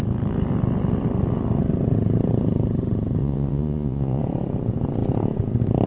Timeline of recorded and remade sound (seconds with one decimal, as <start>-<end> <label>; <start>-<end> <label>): 0.0-3.2 recorded; 3.2-4.2 remade; 4.2-5.9 recorded